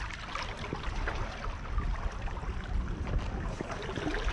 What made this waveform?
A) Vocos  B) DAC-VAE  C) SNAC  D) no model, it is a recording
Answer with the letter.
D